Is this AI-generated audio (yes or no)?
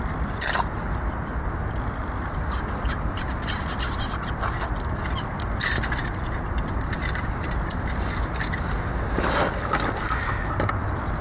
no